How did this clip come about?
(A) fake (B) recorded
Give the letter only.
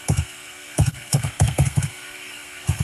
A